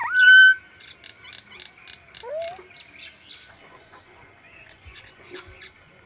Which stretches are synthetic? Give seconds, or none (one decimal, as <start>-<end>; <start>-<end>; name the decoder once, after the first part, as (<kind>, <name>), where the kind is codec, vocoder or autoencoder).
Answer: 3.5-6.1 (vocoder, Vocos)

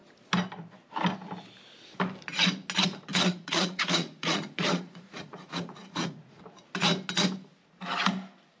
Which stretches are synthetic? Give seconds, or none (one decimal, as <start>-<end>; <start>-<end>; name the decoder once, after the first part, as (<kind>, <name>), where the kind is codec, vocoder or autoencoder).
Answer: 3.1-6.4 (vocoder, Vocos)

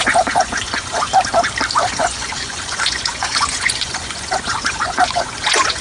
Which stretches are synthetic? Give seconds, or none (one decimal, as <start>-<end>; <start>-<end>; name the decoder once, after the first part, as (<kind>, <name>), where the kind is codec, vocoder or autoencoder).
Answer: 0.0-1.1 (vocoder, Vocos); 1.7-5.8